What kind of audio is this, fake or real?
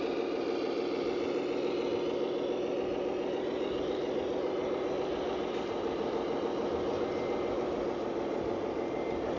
real